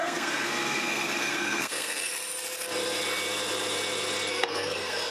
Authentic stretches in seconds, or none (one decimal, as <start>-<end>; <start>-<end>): 2.1-4.3